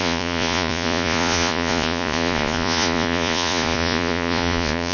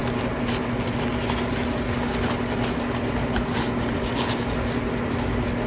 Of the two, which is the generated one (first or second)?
first